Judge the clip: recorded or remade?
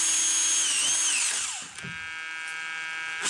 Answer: recorded